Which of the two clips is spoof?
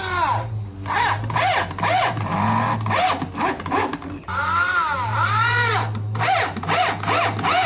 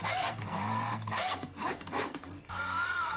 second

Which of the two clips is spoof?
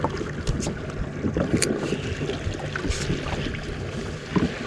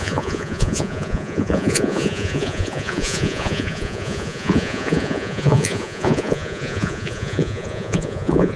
second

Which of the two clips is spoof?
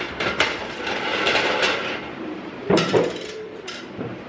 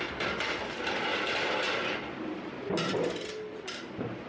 first